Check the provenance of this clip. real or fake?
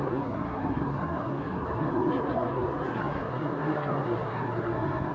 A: fake